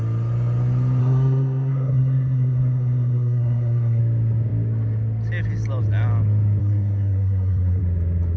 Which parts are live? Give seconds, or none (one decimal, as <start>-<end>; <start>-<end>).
0.0-1.0; 4.0-6.6; 7.8-8.4